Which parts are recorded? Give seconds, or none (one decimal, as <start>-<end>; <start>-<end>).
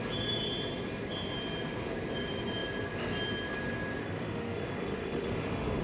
0.0-4.0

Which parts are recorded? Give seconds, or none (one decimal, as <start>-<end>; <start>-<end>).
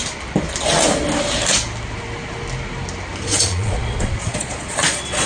0.0-3.2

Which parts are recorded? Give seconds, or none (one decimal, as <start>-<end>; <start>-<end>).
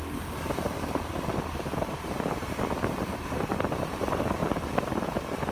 4.4-5.5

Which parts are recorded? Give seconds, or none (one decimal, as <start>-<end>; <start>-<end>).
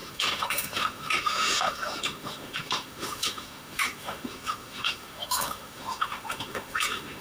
none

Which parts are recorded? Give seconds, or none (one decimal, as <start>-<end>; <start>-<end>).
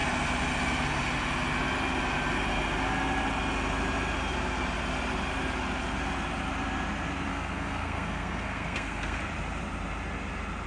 0.0-7.3; 9.2-10.7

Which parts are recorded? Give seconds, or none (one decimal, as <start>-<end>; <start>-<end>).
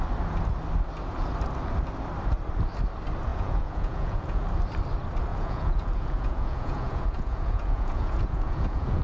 0.0-3.3; 4.4-5.3